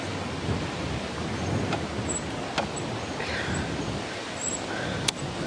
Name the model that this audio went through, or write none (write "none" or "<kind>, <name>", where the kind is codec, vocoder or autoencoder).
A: none